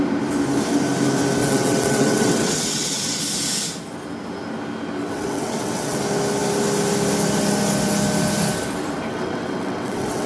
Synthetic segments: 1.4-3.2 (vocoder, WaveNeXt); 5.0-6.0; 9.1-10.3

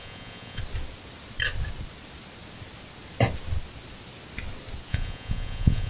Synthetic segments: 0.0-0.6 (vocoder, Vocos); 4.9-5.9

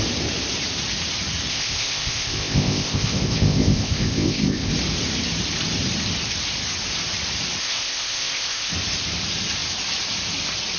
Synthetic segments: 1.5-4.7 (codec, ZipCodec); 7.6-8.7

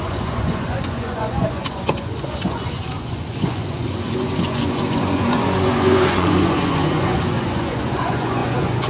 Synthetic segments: 0.0-8.9 (vocoder, Vocos)

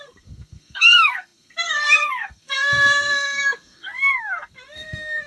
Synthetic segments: 0.0-5.3 (codec, SNAC)

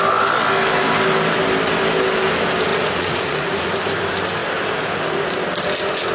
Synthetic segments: 2.7-3.7 (vocoder, Vocos)